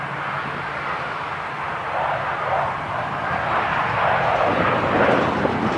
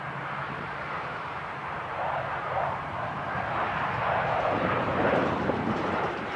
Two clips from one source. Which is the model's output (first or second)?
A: second